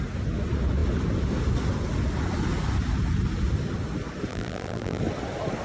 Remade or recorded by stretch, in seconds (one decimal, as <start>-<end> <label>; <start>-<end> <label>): 0.0-4.3 recorded; 4.3-5.0 remade; 5.0-5.6 recorded